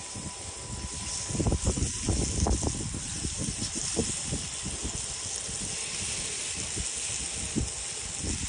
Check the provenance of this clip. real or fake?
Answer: real